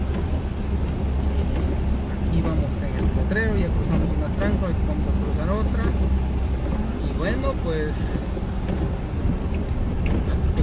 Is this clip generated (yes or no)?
no